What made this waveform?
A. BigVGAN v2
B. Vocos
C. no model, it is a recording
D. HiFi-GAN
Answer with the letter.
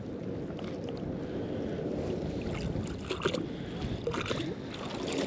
C